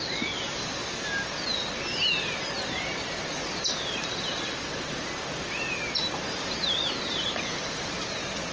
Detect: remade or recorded recorded